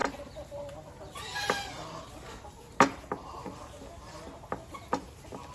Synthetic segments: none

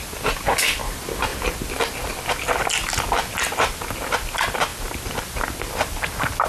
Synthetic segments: none

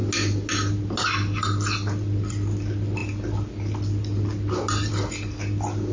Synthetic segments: none

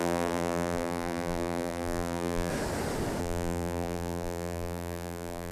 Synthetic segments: 0.0-2.5 (vocoder, BigVGAN v2); 3.2-5.5

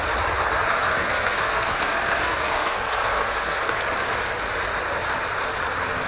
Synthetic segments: 1.0-3.8 (codec, SNAC)